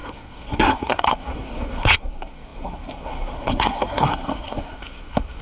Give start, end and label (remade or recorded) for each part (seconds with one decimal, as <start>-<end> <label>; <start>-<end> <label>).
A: 0.0-5.4 remade